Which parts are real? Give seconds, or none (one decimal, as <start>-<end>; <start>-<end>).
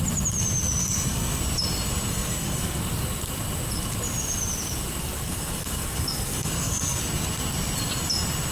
0.0-0.8; 1.4-2.1; 2.8-5.0; 7.0-8.5